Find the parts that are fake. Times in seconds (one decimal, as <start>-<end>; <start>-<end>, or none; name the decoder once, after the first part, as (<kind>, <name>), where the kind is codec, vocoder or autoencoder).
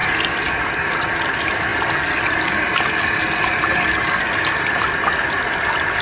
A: none